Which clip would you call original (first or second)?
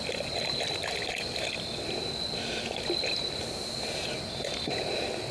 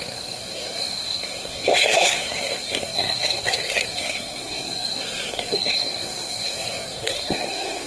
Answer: first